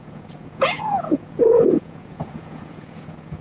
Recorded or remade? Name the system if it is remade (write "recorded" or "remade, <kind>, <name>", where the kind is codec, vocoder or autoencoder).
remade, vocoder, Vocos